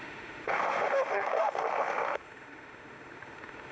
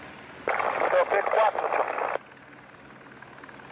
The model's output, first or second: first